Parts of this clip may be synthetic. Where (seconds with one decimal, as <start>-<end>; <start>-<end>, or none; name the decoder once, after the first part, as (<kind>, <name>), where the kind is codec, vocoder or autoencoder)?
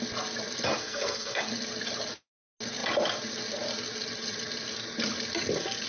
0.8-1.4 (codec, SNAC)